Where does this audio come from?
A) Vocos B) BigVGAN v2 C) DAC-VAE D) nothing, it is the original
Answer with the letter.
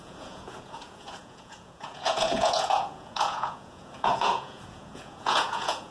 A